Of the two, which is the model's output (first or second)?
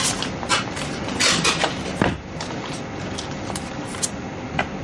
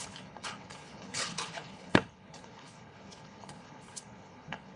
second